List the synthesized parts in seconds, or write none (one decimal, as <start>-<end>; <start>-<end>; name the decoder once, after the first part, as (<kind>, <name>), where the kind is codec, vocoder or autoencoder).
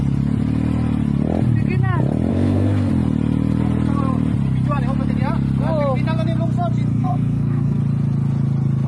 2.3-2.9 (codec, SNAC); 6.9-7.8